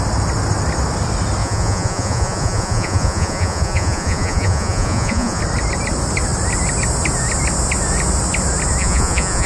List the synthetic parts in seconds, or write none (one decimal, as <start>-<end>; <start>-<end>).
1.4-5.4; 8.8-9.5